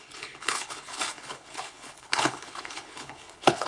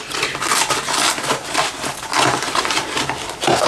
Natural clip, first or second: second